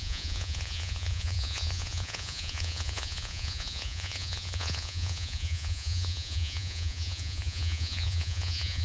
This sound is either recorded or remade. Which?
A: remade